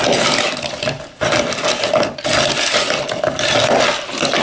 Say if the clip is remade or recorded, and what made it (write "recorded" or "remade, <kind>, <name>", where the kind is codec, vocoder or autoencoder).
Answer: recorded